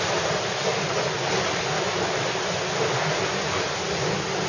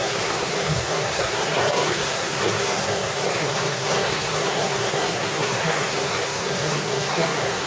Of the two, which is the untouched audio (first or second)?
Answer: first